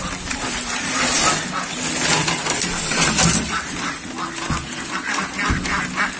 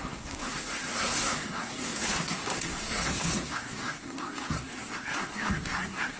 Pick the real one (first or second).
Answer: first